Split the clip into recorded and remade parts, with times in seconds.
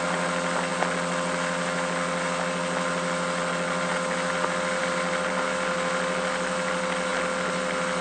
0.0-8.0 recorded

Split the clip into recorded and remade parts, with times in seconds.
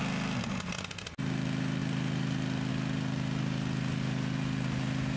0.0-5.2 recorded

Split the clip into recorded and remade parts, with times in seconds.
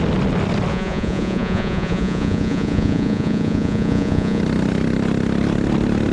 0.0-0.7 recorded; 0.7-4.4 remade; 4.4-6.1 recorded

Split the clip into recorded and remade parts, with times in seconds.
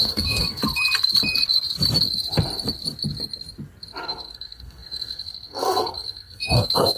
0.0-0.6 remade; 0.6-4.0 recorded; 4.0-7.0 remade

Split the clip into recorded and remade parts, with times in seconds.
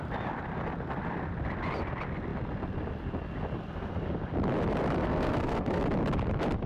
0.0-5.0 recorded; 5.0-5.8 remade; 5.8-6.7 recorded